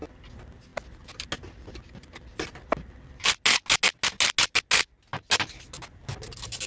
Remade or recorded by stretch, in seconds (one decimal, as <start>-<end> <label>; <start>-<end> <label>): 0.0-6.7 recorded